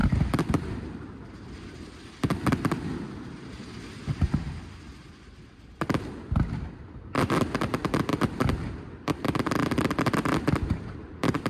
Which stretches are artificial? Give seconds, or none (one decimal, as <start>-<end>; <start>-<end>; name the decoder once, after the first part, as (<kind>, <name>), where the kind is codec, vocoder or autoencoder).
0.0-0.7 (vocoder, BigVGAN v2); 8.1-11.5